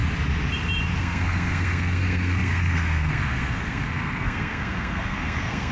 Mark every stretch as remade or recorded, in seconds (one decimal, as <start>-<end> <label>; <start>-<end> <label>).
0.0-1.0 recorded; 1.0-5.7 remade